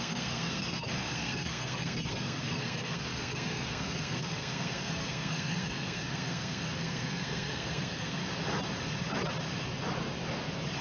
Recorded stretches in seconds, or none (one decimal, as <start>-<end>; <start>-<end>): 8.2-10.8